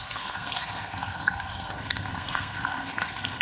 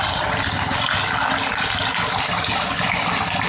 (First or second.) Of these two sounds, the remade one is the first